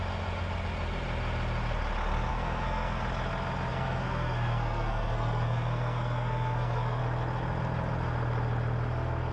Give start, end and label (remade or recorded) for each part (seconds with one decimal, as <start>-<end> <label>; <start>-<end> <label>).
0.0-2.3 recorded; 2.3-3.0 remade; 3.0-3.7 recorded; 3.7-7.0 remade; 7.0-9.3 recorded